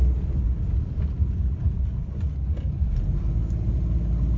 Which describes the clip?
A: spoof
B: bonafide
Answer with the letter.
B